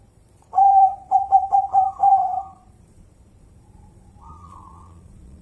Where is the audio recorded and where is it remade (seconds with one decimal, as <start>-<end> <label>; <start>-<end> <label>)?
0.0-5.4 remade